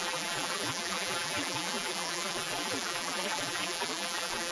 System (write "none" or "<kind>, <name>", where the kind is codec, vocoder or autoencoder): vocoder, BigVGAN v2